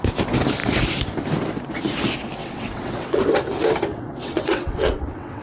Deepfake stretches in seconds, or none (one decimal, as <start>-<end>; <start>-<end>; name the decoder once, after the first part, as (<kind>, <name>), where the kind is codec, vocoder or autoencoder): 2.4-3.2 (vocoder, WaveNeXt); 3.9-5.4